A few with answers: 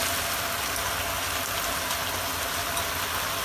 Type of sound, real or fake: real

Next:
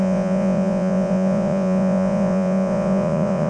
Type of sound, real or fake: fake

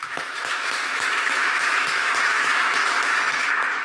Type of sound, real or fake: fake